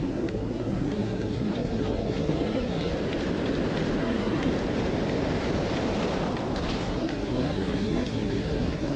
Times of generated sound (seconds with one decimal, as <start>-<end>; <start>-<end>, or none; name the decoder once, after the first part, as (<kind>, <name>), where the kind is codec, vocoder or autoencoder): 0.0-2.9 (codec, SNAC); 4.0-4.5; 6.8-9.0